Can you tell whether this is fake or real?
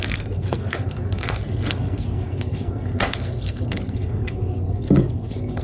fake